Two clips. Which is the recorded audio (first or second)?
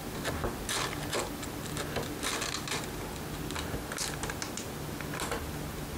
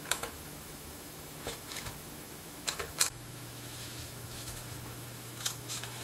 first